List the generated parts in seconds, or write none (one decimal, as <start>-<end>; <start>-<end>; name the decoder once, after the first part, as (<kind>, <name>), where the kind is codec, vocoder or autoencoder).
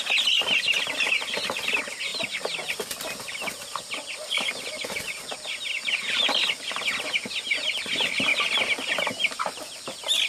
none